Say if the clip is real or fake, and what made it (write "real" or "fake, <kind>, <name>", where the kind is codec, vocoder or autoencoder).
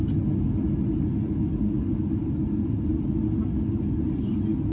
real